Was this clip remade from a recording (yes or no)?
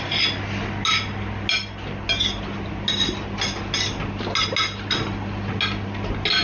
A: no